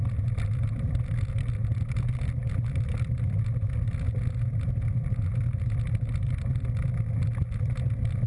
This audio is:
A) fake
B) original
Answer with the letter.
B